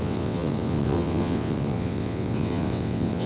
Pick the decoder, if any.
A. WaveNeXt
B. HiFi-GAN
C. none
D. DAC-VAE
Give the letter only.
A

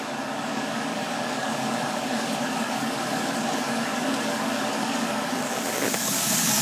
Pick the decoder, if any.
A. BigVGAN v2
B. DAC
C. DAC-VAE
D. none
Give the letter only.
B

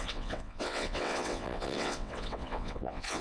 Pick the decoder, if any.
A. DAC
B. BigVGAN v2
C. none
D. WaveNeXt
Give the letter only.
D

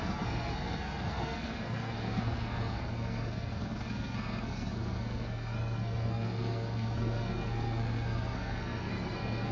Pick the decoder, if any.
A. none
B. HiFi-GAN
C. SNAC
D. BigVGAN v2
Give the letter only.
C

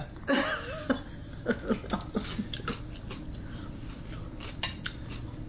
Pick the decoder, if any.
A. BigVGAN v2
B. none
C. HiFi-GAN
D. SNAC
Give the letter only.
B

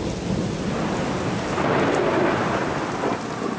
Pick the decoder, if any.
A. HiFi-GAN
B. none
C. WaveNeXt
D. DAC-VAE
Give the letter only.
B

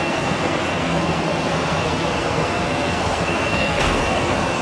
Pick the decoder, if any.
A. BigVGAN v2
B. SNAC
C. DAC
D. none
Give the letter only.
B